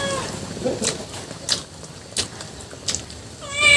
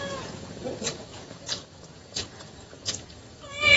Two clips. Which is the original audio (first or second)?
first